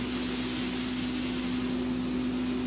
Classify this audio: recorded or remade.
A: recorded